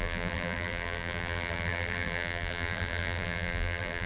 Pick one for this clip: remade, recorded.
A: remade